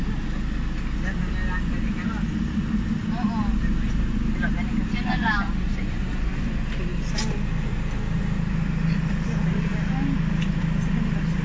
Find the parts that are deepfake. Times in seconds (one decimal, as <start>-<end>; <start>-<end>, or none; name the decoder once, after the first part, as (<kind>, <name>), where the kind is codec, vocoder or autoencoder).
none